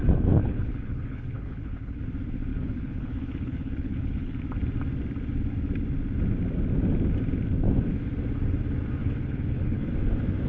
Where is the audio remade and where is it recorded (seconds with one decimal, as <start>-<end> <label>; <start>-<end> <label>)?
0.0-0.4 recorded; 0.4-2.0 remade; 2.0-2.5 recorded; 2.5-4.4 remade; 4.4-9.0 recorded; 9.0-9.9 remade; 9.9-10.5 recorded